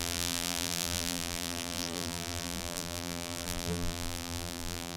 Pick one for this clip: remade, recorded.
remade